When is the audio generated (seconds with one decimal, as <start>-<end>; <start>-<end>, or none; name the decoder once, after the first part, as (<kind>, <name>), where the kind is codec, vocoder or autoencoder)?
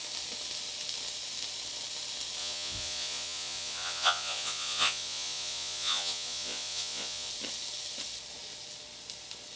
2.4-7.3 (vocoder, Vocos)